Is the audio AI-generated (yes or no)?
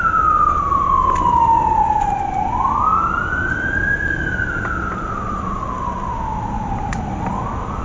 no